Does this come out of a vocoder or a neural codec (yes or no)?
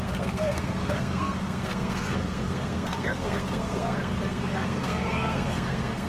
yes